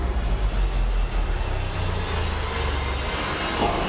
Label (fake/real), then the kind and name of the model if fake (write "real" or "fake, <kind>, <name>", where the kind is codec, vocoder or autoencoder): real